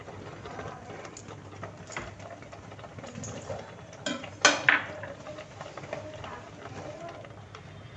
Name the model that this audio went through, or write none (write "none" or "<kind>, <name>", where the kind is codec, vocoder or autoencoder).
none